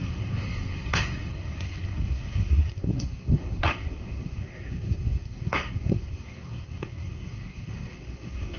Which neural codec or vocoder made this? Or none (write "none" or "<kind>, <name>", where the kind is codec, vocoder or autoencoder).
codec, SNAC